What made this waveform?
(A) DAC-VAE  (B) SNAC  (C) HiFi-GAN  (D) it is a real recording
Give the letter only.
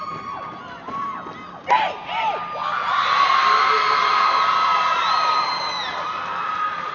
D